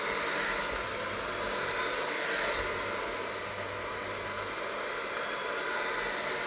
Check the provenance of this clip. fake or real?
real